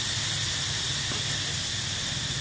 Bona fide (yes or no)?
yes